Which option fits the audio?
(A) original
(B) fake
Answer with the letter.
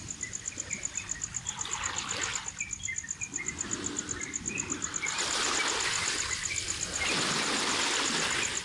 A